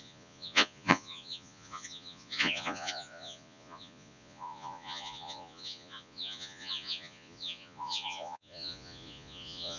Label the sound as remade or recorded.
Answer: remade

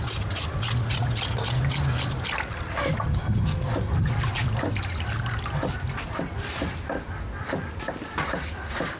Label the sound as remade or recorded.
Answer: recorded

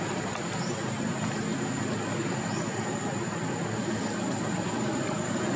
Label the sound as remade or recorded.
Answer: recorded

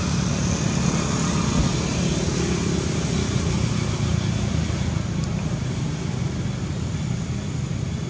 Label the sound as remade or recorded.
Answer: recorded